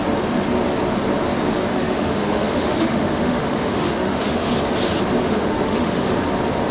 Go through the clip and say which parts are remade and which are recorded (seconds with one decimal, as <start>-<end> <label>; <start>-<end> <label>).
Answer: 0.0-1.7 recorded; 1.7-4.5 remade; 4.5-5.2 recorded; 5.2-6.1 remade; 6.1-6.7 recorded